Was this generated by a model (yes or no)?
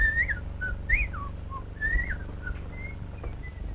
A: no